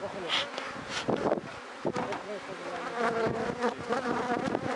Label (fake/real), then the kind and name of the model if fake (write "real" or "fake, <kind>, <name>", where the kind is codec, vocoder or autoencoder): real